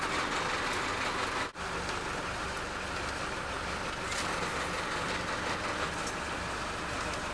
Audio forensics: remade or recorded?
recorded